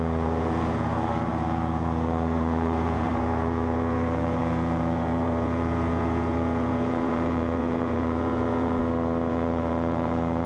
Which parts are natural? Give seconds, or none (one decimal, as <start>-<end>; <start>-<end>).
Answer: 8.8-9.3